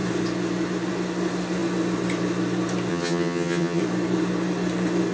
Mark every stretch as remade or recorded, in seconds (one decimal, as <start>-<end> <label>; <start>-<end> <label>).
0.0-2.9 recorded; 2.9-3.8 remade; 3.8-5.1 recorded